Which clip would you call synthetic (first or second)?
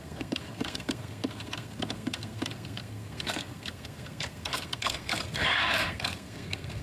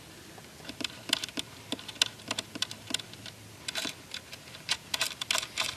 first